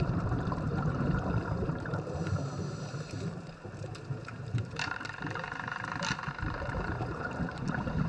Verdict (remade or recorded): remade